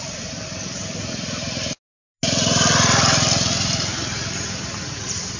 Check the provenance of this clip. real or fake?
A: real